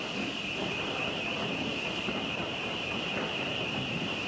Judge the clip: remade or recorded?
remade